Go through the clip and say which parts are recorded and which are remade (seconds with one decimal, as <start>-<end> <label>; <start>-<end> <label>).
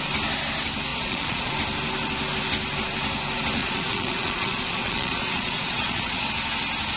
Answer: 0.0-0.9 recorded; 0.9-1.5 remade; 1.5-3.6 recorded; 3.6-6.3 remade; 6.3-7.0 recorded